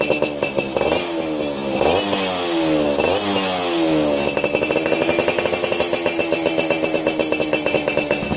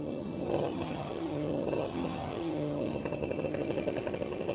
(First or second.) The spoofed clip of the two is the second